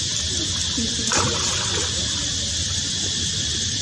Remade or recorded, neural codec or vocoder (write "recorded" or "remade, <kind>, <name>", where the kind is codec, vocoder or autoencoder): remade, vocoder, BigVGAN v2